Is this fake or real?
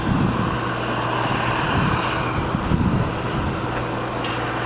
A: real